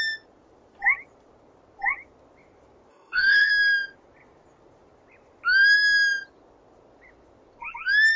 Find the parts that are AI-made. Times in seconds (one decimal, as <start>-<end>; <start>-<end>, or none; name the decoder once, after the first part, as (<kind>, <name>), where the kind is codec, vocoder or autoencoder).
2.9-3.5 (codec, DAC)